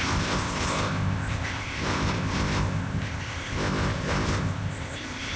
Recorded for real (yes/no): no